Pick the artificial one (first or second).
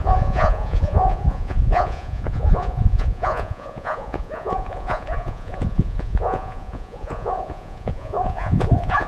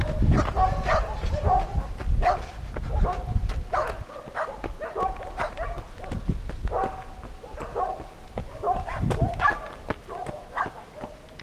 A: first